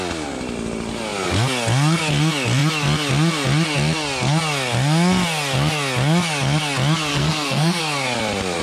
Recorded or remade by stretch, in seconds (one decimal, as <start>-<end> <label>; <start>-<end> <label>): 0.0-7.1 recorded; 7.1-7.8 remade; 7.8-8.6 recorded